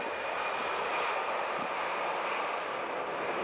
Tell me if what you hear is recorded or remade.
recorded